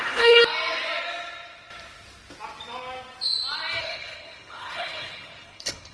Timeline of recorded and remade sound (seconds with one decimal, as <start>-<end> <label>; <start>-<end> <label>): 0.0-0.4 remade; 0.4-3.8 recorded; 3.8-5.9 remade